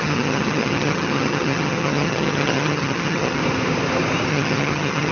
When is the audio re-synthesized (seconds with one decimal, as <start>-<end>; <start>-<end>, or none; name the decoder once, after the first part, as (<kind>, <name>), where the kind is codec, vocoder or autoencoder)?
0.0-3.4 (vocoder, HiFi-GAN); 4.3-5.1